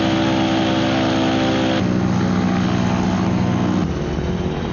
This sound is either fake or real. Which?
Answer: real